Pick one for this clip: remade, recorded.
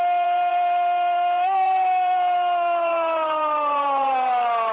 remade